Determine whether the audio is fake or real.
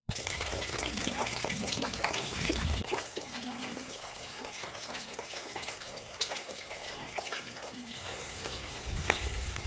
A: fake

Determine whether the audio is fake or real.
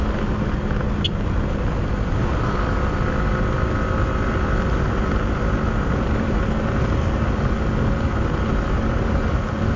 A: real